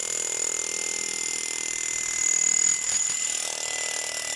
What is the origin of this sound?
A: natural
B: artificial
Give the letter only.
A